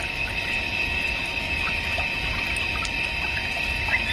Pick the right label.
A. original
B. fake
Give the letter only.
A